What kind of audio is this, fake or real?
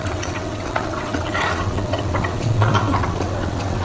fake